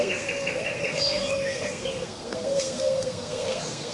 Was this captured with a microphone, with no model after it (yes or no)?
no